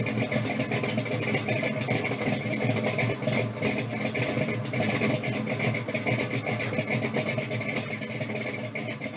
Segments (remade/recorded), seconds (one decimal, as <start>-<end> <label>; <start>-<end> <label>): 0.0-9.2 recorded